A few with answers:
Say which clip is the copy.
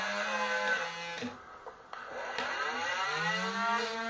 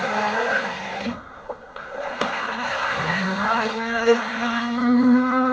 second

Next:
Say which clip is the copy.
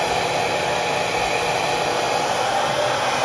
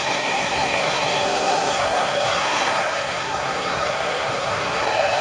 second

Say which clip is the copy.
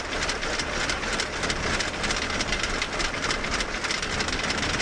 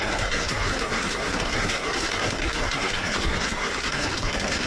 second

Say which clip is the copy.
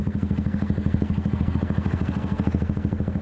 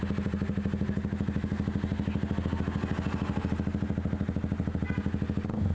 first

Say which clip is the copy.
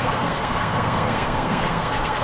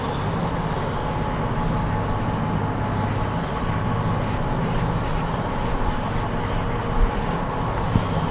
first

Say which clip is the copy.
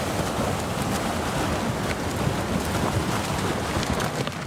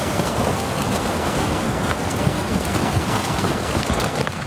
second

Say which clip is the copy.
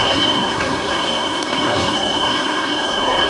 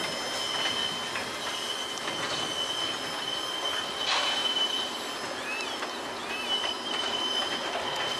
first